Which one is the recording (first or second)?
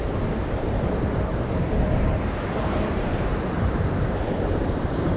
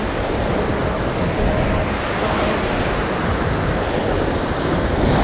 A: second